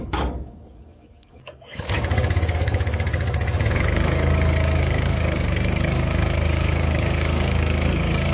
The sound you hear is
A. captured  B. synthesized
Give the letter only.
B